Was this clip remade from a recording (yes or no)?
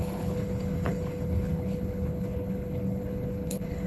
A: yes